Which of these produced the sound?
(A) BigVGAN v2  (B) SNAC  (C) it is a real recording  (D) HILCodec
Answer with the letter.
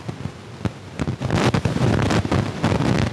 C